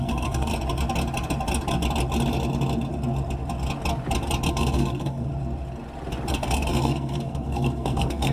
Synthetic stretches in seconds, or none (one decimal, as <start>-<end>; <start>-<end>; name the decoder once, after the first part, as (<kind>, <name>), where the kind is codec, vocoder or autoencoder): 0.0-0.5 (codec, SNAC); 4.5-5.3; 6.3-8.3